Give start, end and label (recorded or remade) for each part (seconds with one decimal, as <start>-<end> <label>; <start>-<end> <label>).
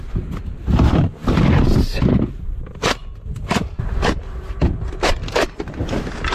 0.0-1.2 recorded; 1.2-2.0 remade; 2.0-3.0 recorded; 3.0-5.1 remade; 5.1-6.3 recorded